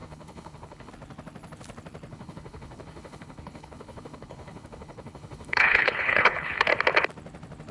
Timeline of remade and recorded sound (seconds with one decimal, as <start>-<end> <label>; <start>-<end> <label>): 0.0-0.9 remade; 0.9-2.1 recorded; 2.1-6.7 remade; 6.7-7.7 recorded